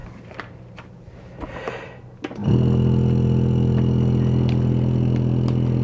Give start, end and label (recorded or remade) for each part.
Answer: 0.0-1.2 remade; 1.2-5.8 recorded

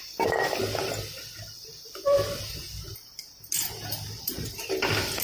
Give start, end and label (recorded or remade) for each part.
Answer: 0.0-0.6 remade; 0.6-5.2 recorded